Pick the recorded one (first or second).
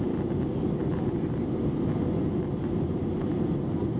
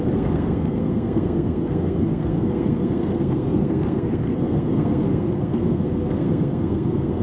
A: first